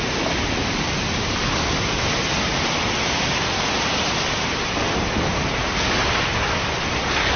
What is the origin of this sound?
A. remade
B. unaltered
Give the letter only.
B